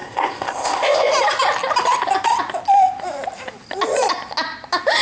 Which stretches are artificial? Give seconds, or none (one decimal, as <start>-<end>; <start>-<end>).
0.0-1.1